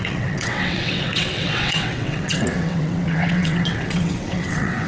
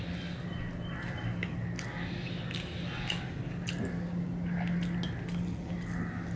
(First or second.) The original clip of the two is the second